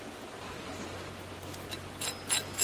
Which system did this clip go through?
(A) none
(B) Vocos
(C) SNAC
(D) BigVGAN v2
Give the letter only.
A